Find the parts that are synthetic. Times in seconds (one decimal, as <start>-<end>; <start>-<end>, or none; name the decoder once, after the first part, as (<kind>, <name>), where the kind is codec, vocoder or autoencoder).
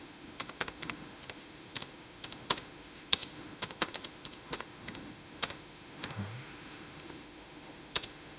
0.0-8.4 (autoencoder, DAC-VAE)